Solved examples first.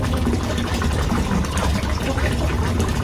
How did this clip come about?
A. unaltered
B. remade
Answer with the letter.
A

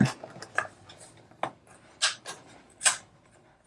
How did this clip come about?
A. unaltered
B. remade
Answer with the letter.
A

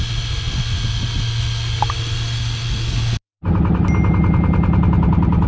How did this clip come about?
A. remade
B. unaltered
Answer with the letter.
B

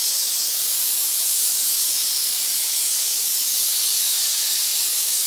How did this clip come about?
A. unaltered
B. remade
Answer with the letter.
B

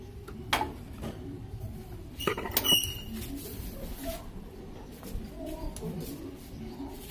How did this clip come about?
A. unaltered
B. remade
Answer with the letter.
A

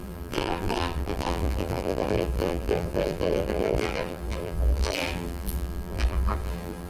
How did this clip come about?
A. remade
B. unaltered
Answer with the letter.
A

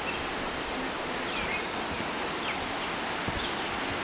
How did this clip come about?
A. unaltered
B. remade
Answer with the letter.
A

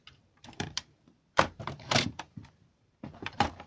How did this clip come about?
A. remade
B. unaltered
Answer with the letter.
A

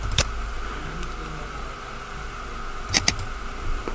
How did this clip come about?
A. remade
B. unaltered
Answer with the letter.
B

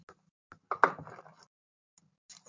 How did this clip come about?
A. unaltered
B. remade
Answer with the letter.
A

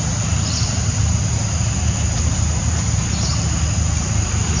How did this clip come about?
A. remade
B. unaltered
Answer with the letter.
B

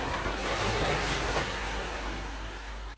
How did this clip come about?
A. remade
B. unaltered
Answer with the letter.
A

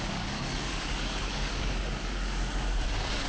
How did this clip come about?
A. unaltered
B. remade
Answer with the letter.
B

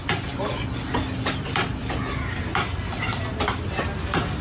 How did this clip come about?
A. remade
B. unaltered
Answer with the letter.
B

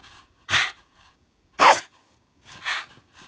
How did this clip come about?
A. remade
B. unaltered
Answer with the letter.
A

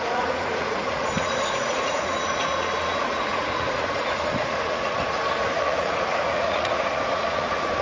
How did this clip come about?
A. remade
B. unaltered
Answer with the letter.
A